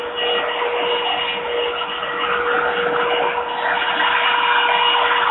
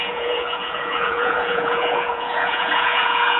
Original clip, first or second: first